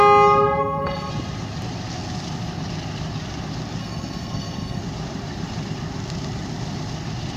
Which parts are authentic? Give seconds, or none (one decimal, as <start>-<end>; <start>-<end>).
0.0-0.6; 1.1-3.8; 4.8-7.4